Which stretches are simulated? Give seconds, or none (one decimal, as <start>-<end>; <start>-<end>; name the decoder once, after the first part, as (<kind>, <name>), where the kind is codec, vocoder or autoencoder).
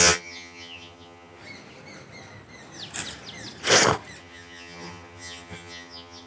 0.0-1.4 (vocoder, HiFi-GAN); 4.2-6.3